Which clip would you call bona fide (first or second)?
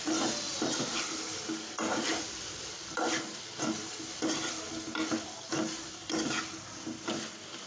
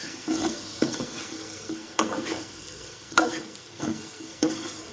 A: first